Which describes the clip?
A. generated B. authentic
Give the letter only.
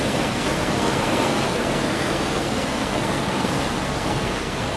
A